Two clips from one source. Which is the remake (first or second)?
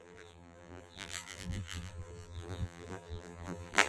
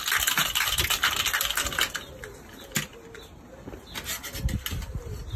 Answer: first